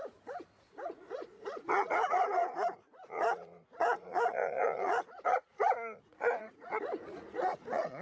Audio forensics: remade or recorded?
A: remade